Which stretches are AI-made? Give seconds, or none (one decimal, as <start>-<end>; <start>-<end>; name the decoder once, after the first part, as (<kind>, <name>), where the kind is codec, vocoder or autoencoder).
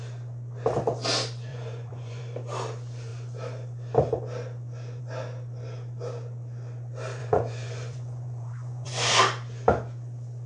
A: 1.5-2.2 (vocoder, Vocos); 7.2-9.2